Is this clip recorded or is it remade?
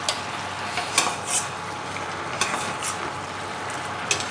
recorded